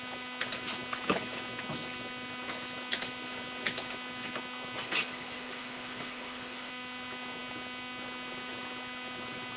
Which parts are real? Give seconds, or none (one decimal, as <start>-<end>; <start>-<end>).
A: 0.0-4.8; 6.7-9.6